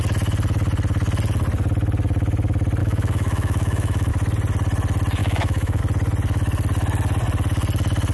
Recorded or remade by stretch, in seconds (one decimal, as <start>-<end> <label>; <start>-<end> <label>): 0.0-2.8 recorded; 2.8-4.1 remade; 4.1-5.2 recorded; 5.2-5.8 remade; 5.8-8.1 recorded